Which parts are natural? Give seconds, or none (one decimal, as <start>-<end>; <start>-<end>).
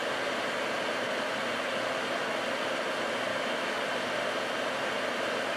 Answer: 0.0-3.3; 3.8-5.6